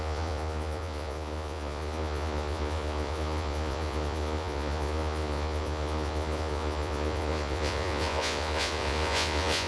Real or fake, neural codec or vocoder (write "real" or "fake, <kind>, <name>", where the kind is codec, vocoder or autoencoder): fake, vocoder, Vocos